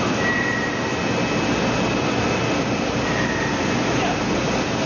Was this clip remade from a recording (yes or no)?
no